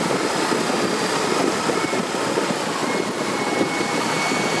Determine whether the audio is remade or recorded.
recorded